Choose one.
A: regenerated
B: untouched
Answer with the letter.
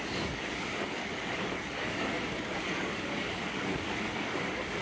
A